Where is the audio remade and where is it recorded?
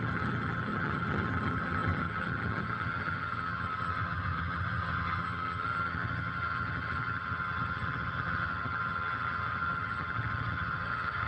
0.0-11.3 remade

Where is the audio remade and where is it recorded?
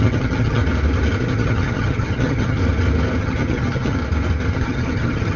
0.0-0.6 remade; 0.6-1.2 recorded; 1.2-2.6 remade; 2.6-3.2 recorded; 3.2-4.0 remade; 4.0-4.5 recorded; 4.5-5.4 remade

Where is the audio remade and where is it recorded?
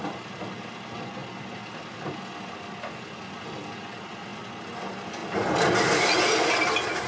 0.0-7.1 recorded